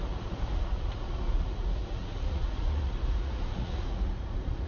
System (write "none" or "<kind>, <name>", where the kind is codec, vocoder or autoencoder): vocoder, Vocos